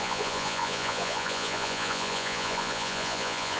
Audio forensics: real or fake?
fake